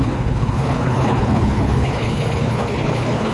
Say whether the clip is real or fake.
fake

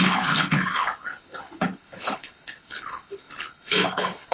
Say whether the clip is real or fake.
fake